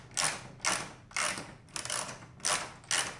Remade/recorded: recorded